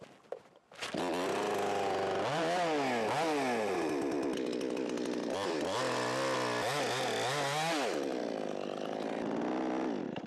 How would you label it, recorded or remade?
recorded